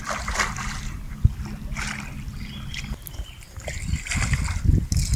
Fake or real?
real